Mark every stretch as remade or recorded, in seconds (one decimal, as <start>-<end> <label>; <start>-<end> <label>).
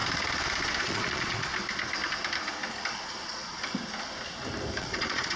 0.0-0.8 recorded; 0.8-1.5 remade; 1.5-3.0 recorded; 3.0-3.6 remade; 3.6-4.8 recorded; 4.8-5.4 remade